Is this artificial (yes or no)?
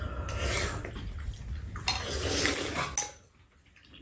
no